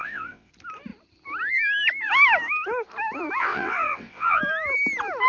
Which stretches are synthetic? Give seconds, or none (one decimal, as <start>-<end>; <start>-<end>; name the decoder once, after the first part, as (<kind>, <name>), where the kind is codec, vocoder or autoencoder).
0.0-0.5 (vocoder, WaveNeXt); 3.4-4.4